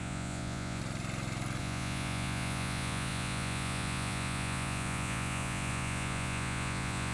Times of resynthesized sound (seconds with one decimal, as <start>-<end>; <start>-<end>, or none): 0.0-0.8; 1.6-7.1